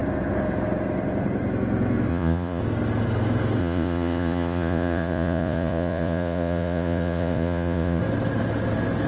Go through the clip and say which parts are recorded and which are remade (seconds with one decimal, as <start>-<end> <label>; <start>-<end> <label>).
0.0-2.1 recorded; 2.1-2.6 remade; 2.6-3.6 recorded; 3.6-8.0 remade; 8.0-9.1 recorded